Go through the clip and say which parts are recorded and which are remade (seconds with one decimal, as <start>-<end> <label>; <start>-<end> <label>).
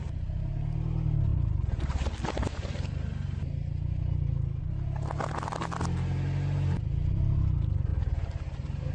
0.0-8.9 recorded